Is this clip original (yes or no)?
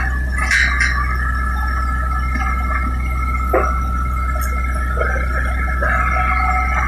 yes